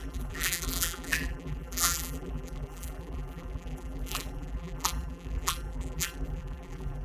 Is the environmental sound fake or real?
fake